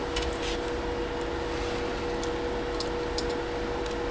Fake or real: real